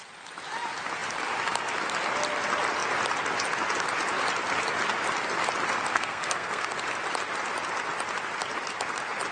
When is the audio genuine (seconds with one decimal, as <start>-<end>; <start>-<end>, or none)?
0.0-5.9; 6.7-9.3